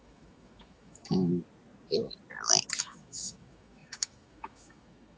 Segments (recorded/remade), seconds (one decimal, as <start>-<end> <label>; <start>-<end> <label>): 0.0-1.3 remade; 1.3-2.8 recorded; 2.8-5.2 remade